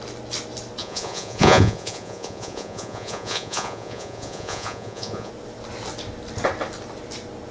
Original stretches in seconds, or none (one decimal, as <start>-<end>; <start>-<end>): 0.0-0.8; 5.3-7.5